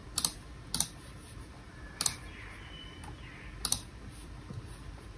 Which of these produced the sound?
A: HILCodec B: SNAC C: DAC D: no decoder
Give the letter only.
D